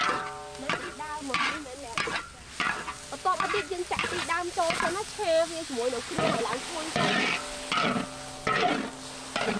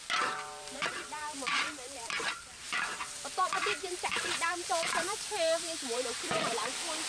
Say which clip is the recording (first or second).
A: first